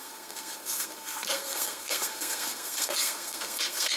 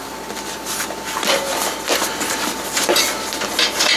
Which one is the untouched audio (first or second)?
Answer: second